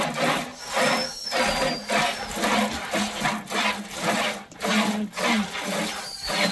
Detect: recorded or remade recorded